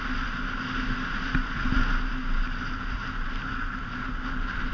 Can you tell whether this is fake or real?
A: real